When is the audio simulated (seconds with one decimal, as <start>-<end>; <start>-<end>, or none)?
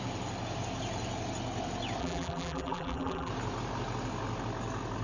2.0-3.3